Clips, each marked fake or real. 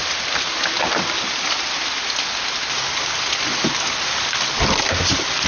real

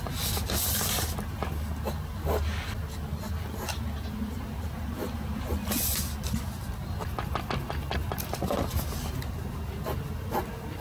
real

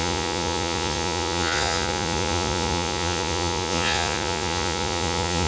fake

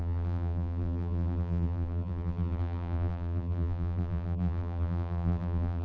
fake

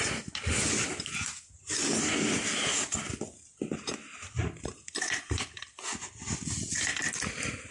real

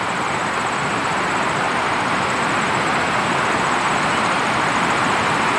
fake